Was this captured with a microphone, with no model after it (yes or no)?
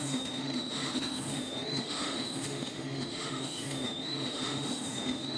no